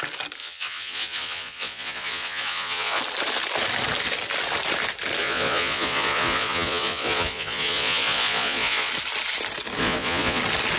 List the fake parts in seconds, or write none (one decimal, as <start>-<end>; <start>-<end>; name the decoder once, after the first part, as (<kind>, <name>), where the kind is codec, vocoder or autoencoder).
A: 0.4-3.0 (vocoder, Vocos); 5.2-8.9; 9.8-10.4